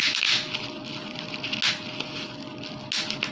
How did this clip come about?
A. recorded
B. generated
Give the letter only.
A